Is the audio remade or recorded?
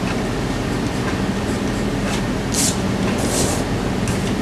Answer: recorded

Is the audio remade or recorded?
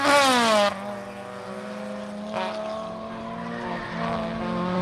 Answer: recorded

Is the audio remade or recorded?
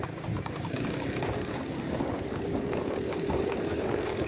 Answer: remade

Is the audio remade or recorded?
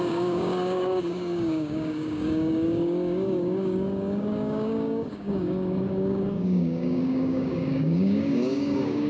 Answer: remade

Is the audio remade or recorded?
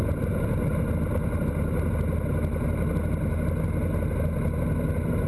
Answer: recorded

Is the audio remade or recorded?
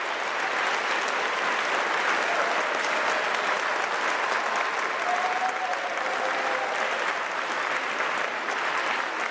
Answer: recorded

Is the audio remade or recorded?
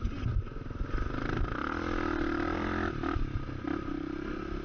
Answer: recorded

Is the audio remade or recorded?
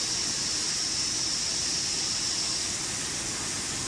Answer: recorded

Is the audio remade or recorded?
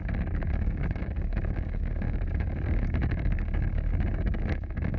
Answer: remade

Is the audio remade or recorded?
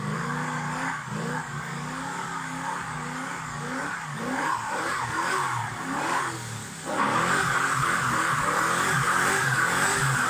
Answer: remade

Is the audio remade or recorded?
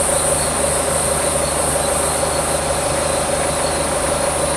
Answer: recorded